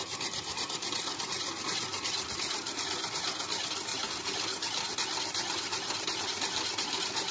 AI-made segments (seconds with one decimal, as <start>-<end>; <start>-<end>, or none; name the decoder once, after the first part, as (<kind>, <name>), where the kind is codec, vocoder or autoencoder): none